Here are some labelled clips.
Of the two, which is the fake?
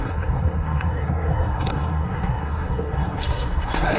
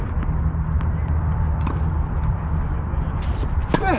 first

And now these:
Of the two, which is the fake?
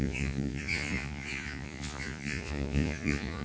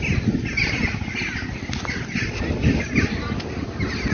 first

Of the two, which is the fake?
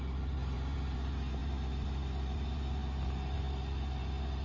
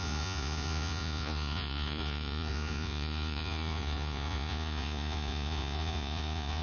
second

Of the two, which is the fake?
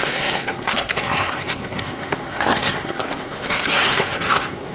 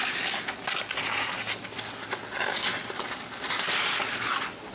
first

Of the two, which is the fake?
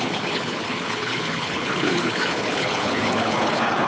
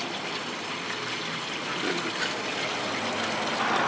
first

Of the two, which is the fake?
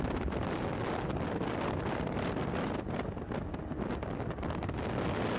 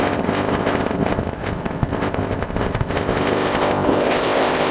second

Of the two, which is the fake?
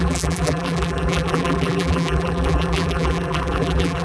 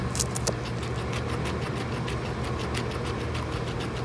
first